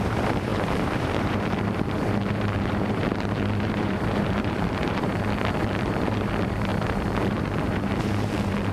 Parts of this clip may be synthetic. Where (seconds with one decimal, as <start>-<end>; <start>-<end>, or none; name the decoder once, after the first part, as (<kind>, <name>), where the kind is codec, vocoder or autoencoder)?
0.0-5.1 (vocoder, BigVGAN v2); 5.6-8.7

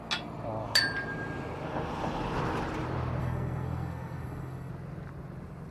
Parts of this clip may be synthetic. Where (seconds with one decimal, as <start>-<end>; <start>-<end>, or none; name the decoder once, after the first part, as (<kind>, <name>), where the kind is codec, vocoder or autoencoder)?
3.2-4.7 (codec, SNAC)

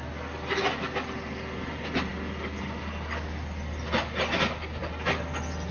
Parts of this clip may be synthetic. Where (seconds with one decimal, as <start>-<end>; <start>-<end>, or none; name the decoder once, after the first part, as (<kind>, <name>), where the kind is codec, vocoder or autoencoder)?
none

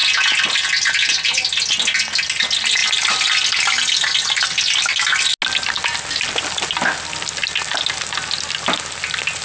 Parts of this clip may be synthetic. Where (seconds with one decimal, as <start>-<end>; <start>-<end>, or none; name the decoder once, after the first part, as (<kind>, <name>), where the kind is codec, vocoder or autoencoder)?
none

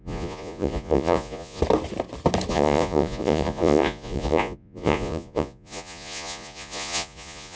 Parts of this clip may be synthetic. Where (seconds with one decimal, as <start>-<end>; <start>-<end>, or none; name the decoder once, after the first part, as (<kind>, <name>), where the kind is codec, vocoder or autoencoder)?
0.0-1.6 (vocoder, Vocos); 2.5-7.6

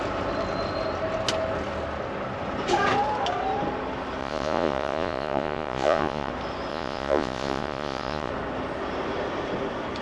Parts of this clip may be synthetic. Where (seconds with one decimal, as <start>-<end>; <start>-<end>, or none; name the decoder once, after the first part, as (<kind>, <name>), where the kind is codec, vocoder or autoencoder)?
4.2-6.3 (vocoder, Vocos); 6.7-8.3